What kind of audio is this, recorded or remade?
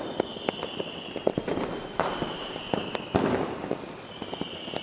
recorded